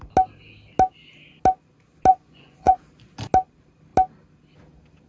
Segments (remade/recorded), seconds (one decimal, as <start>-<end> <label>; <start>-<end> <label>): 0.0-2.1 recorded; 2.1-2.8 remade; 2.8-5.1 recorded